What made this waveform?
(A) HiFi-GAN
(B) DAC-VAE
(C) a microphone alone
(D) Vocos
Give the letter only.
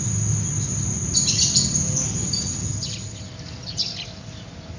C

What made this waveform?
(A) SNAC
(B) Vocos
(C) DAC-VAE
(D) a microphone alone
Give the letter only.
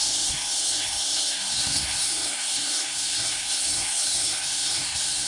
A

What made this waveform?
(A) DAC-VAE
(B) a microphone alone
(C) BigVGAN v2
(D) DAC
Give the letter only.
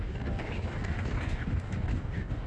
D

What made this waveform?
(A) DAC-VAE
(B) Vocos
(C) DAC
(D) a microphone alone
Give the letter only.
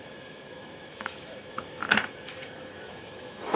A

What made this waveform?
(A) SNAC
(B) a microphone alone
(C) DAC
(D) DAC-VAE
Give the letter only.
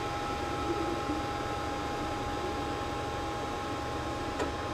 B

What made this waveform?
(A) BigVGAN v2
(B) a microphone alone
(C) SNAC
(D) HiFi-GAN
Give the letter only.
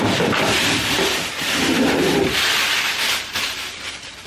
B